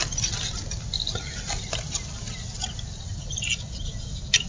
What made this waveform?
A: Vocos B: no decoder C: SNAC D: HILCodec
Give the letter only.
B